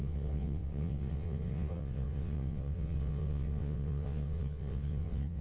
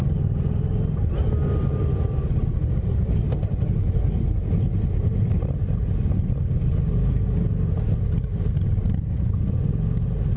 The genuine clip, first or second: second